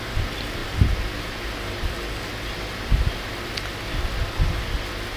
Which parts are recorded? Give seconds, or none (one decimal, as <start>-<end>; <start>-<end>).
0.0-5.2